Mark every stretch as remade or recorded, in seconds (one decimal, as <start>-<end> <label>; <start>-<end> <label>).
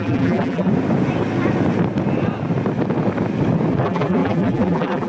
0.0-0.7 remade; 0.7-3.8 recorded; 3.8-5.1 remade